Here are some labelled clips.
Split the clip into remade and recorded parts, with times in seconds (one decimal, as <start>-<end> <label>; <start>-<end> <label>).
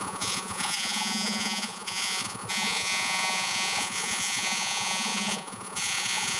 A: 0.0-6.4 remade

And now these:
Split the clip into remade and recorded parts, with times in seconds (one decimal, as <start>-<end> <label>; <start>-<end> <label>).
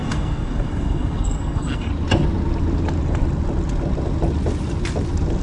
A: 0.0-1.9 remade; 1.9-5.4 recorded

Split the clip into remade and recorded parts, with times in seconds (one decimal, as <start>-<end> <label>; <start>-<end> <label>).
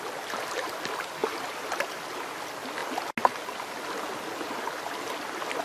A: 0.0-5.6 recorded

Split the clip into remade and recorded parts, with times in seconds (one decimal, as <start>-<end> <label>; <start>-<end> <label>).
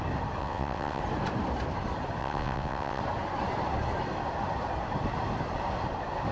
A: 0.0-0.4 recorded; 0.4-1.0 remade; 1.0-2.2 recorded; 2.2-3.0 remade; 3.0-6.3 recorded